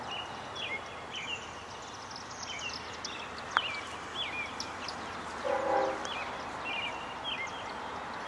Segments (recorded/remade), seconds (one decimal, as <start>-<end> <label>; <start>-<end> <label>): 0.0-8.3 recorded